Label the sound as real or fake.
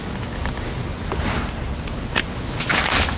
real